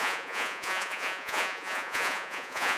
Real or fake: fake